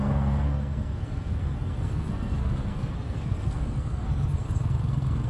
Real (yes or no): no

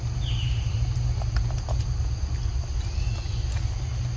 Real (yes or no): yes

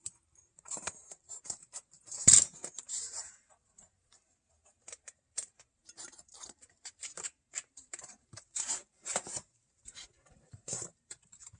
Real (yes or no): no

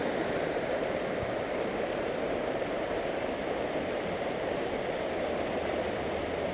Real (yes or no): yes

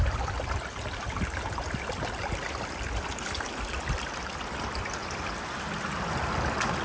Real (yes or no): yes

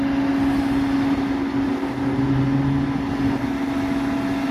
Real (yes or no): yes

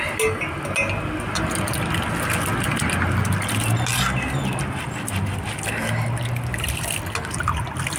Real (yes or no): yes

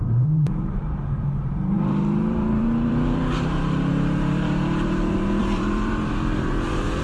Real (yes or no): no